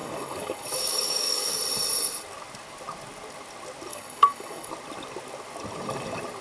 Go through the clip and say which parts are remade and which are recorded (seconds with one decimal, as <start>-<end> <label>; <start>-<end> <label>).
0.0-1.6 remade; 1.6-3.9 recorded; 3.9-4.7 remade; 4.7-6.4 recorded